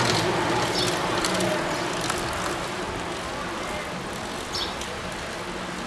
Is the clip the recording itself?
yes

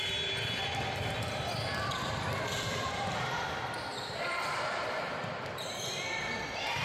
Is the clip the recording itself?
no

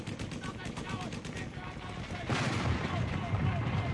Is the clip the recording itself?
yes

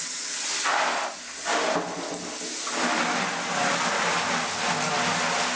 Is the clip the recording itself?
yes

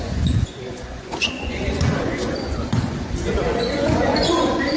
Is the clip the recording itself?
no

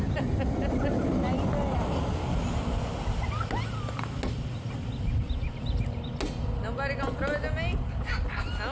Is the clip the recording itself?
yes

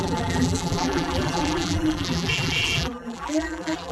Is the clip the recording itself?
no